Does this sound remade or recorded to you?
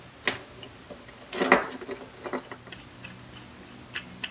recorded